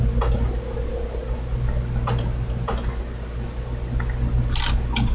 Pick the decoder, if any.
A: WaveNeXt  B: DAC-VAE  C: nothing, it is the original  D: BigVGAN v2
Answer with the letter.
C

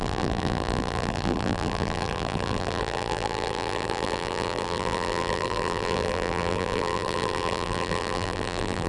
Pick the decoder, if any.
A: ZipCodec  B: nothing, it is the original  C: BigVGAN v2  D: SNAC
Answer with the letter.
C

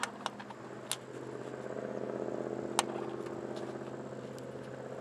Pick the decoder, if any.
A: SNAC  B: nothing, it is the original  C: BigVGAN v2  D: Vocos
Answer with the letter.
B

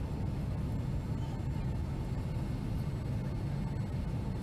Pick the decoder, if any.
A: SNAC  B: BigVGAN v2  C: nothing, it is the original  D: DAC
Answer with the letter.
C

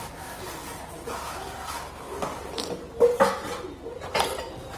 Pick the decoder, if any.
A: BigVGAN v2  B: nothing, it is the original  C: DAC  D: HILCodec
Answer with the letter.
B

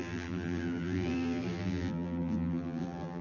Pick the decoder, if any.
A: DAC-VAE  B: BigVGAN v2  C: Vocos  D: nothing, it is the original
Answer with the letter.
B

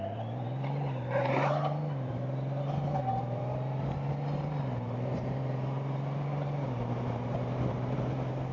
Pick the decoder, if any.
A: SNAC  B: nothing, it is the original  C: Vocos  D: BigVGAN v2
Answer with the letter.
D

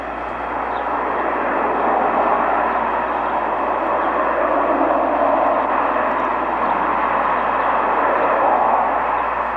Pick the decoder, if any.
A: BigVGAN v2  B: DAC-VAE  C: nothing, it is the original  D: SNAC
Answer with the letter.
C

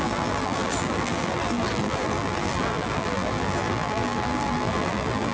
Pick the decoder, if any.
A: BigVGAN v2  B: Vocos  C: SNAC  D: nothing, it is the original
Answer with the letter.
A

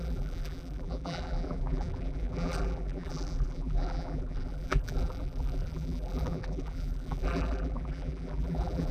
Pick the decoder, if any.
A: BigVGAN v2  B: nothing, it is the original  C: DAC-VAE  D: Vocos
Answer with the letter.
A